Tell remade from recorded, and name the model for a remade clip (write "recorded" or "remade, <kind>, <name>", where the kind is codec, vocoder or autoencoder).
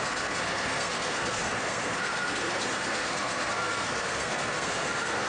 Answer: remade, codec, SNAC